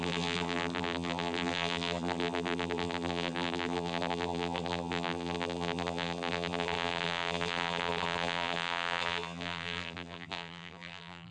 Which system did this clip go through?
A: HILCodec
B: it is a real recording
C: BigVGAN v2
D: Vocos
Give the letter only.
C